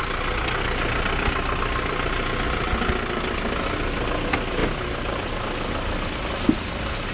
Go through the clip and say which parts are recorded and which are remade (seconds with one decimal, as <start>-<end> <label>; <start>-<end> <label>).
0.0-7.1 recorded